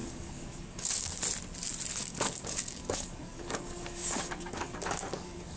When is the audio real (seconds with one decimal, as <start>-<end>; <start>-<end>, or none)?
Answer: 1.1-1.9